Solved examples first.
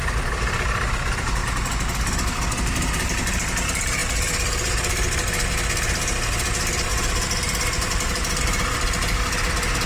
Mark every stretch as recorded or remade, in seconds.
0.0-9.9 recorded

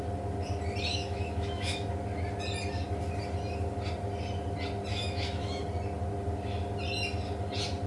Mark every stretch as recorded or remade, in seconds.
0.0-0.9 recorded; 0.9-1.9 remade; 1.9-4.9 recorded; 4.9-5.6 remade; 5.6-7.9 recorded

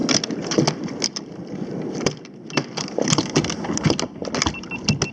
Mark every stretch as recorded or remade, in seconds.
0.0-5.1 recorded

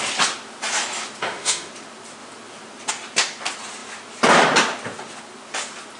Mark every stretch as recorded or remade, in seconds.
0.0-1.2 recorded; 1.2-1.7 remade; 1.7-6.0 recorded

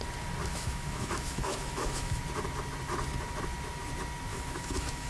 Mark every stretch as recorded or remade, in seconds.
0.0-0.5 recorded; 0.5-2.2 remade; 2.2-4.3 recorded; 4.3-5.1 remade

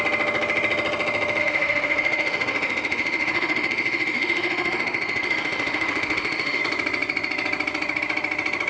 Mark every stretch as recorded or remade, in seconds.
0.0-1.4 recorded; 1.4-6.6 remade; 6.6-8.7 recorded

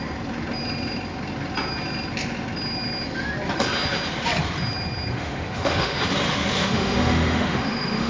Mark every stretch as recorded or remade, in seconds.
0.0-5.1 recorded; 5.1-6.0 remade; 6.0-6.6 recorded; 6.6-8.1 remade